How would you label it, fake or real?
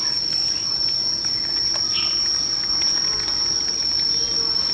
real